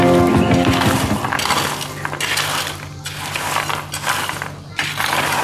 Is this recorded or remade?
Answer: recorded